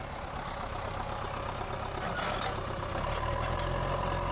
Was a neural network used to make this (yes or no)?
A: no